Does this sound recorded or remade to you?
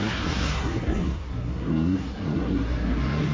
remade